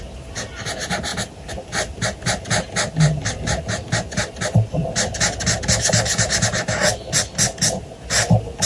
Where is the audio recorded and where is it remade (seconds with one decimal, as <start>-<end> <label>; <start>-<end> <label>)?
0.0-8.7 recorded

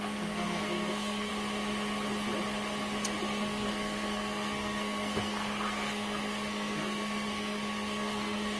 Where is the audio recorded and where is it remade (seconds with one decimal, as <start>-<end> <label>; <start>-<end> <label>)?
0.0-1.3 remade; 1.3-3.2 recorded; 3.2-8.6 remade

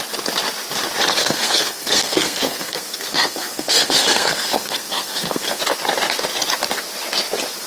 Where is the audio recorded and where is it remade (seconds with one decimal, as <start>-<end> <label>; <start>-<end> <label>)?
0.0-1.2 recorded; 1.2-5.6 remade; 5.6-7.7 recorded

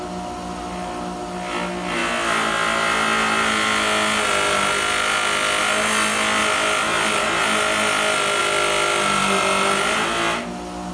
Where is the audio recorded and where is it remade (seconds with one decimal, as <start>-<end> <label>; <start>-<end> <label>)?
0.0-10.9 recorded

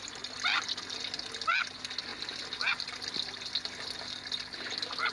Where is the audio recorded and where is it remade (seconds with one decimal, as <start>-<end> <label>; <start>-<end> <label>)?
0.0-5.1 recorded

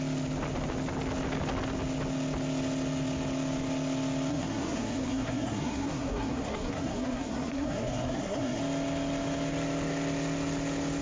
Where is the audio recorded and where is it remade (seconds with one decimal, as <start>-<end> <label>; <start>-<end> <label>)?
0.0-4.3 recorded; 4.3-8.6 remade; 8.6-11.0 recorded

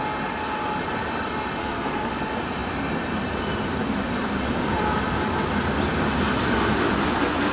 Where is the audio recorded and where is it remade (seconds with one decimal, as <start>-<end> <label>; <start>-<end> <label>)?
0.0-1.6 recorded; 1.6-2.1 remade; 2.1-7.5 recorded

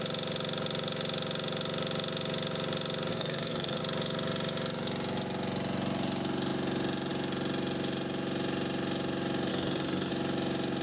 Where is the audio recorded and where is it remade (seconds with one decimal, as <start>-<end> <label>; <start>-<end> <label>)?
0.0-3.1 recorded; 3.1-3.8 remade; 3.8-9.5 recorded; 9.5-10.1 remade; 10.1-10.8 recorded